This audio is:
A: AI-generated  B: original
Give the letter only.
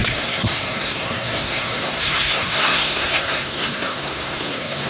A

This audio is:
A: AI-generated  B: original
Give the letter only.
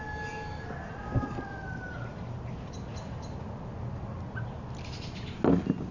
B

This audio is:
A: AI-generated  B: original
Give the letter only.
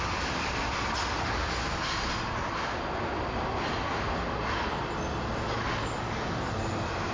B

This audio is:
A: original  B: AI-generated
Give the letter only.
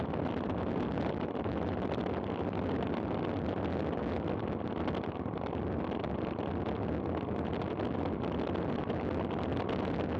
A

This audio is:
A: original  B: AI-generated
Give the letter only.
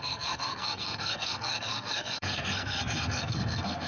B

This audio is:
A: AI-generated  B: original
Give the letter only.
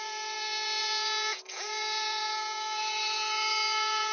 A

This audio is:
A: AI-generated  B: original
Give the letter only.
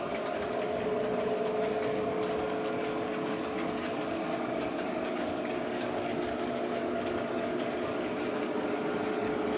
A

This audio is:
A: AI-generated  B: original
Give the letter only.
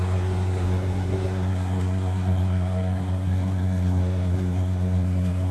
A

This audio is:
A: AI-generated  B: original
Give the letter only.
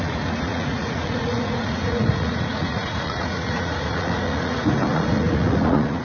A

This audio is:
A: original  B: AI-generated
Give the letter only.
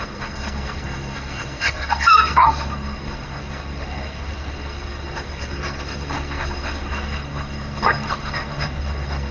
B